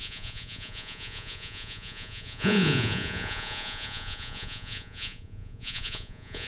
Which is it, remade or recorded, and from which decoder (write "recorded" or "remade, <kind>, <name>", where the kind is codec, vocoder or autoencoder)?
remade, vocoder, Vocos